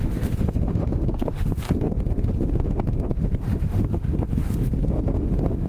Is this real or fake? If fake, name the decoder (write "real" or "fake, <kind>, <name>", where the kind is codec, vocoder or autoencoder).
fake, autoencoder, DAC-VAE